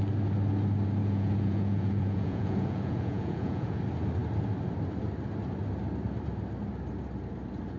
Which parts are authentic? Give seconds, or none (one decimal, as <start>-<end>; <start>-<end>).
0.0-1.0; 3.8-7.8